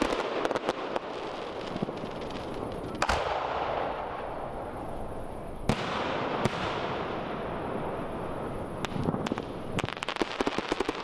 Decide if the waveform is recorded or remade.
recorded